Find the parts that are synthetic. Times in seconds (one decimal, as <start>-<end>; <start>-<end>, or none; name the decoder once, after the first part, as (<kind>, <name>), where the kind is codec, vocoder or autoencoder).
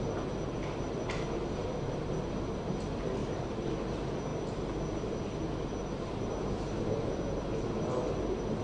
3.2-3.7 (vocoder, BigVGAN v2)